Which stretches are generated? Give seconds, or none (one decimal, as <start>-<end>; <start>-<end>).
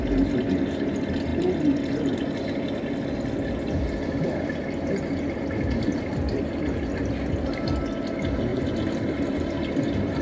8.5-10.2